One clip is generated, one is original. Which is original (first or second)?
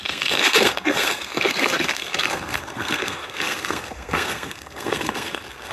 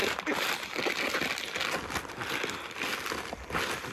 second